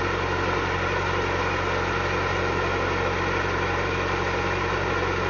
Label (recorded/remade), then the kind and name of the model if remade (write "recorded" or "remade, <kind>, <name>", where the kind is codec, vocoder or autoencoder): recorded